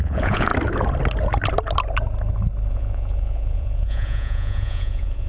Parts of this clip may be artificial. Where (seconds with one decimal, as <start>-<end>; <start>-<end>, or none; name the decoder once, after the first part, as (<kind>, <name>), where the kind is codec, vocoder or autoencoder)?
0.0-0.5 (vocoder, Vocos); 2.7-5.3